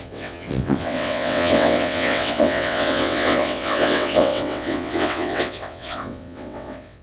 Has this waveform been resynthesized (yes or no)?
yes